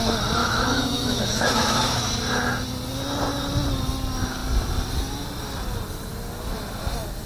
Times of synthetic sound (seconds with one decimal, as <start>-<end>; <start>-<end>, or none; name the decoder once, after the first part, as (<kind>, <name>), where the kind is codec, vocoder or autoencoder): 0.4-2.1 (autoencoder, DAC-VAE)